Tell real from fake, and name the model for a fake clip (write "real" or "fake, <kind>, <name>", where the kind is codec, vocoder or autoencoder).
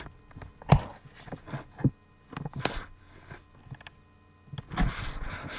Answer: real